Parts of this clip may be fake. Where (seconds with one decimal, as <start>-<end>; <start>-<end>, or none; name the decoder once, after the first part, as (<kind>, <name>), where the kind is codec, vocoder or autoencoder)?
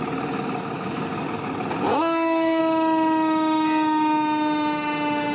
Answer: 1.9-2.6 (codec, SNAC)